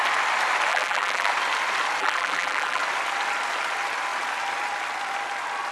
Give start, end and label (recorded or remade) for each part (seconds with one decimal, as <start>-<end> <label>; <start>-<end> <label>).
0.0-0.7 recorded; 0.7-1.3 remade; 1.3-2.0 recorded; 2.0-2.8 remade; 2.8-5.7 recorded